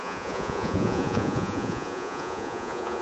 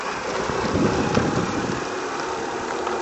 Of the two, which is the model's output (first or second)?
first